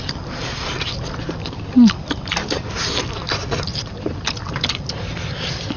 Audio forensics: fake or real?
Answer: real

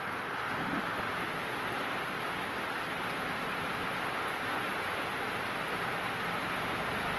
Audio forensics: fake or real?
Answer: real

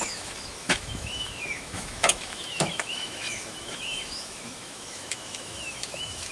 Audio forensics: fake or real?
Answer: fake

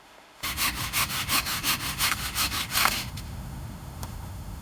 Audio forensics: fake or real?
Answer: fake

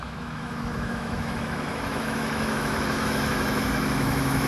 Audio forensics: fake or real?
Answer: fake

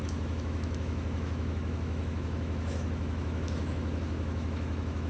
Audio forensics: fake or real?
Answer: fake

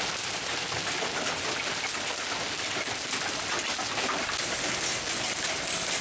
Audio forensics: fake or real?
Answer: real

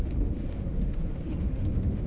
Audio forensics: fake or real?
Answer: fake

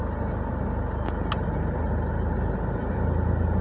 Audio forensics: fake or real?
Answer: real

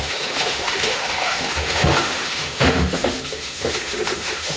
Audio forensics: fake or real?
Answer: fake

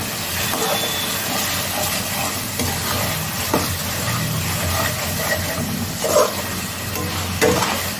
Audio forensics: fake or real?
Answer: real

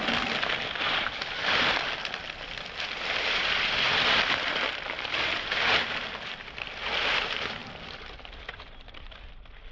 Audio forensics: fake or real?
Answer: real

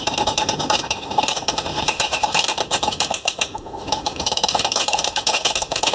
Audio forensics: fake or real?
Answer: fake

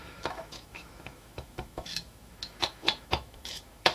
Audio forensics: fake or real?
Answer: fake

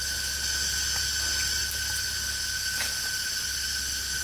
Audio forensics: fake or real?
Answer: real